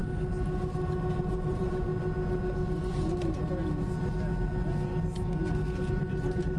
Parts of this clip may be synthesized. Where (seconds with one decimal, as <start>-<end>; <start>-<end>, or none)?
1.2-1.9; 5.9-6.6